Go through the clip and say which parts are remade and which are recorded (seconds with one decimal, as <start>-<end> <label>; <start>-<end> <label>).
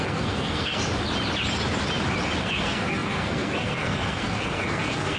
0.0-0.8 remade; 0.8-2.4 recorded; 2.4-5.2 remade